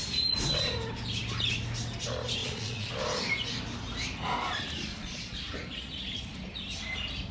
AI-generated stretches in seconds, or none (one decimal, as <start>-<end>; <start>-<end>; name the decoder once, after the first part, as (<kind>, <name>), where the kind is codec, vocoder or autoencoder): 2.4-2.9 (vocoder, Vocos); 4.9-5.4